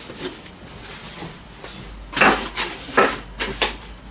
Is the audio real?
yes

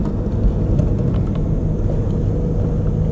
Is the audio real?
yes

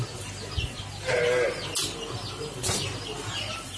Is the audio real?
yes